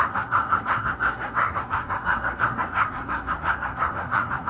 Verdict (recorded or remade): remade